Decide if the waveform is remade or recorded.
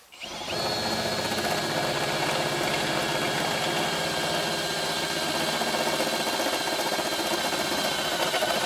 recorded